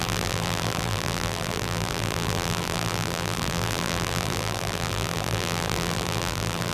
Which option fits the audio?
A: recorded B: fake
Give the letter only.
B